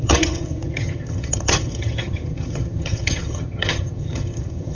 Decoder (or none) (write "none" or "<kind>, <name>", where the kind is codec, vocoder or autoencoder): vocoder, HiFi-GAN